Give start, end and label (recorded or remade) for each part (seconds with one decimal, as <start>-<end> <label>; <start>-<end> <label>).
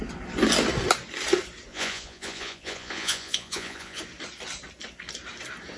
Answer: 0.0-1.7 recorded; 1.7-4.0 remade; 4.0-5.8 recorded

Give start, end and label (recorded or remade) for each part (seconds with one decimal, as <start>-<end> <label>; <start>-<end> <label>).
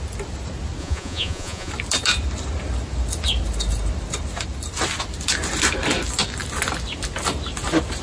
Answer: 0.0-0.8 recorded; 0.8-1.7 remade; 1.7-8.0 recorded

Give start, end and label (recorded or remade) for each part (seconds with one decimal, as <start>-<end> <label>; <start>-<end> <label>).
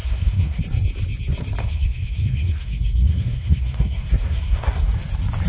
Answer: 0.0-0.6 remade; 0.6-1.6 recorded; 1.6-4.9 remade; 4.9-5.5 recorded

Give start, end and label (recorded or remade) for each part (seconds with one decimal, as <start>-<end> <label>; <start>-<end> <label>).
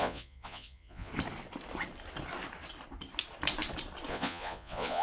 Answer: 0.0-1.1 remade; 1.1-4.1 recorded; 4.1-5.0 remade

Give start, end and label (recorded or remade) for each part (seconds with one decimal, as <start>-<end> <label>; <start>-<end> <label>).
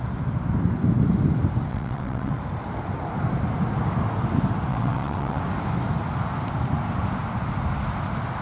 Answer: 0.0-1.7 recorded; 1.7-2.4 remade; 2.4-4.7 recorded; 4.7-5.4 remade; 5.4-8.4 recorded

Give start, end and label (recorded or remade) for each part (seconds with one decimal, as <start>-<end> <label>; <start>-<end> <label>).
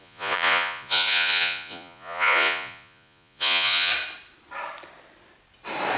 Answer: 0.0-3.9 remade; 3.9-6.0 recorded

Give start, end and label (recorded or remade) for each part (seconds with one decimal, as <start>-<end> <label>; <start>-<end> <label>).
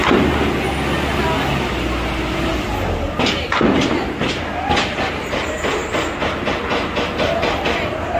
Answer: 0.0-8.2 recorded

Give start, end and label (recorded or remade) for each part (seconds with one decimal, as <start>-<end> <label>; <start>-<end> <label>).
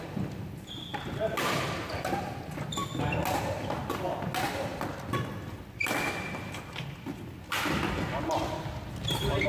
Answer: 0.0-9.5 recorded